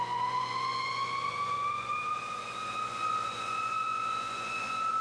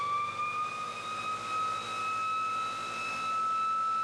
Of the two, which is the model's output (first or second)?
first